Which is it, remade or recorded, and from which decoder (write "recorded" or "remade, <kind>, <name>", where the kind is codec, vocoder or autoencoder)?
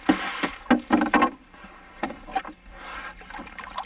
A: recorded